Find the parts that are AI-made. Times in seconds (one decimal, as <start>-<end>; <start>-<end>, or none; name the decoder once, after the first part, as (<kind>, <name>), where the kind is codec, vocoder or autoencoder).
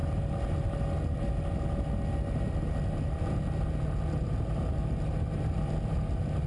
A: none